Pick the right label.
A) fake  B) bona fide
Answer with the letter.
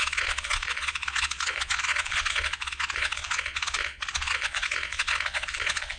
A